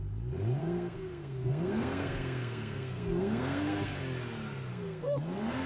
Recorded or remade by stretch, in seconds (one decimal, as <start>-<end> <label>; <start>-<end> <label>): 0.0-0.6 recorded; 0.6-4.0 remade; 4.0-4.7 recorded; 4.7-5.7 remade